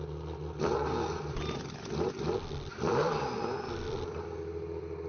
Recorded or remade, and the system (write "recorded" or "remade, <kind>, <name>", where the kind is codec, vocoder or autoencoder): recorded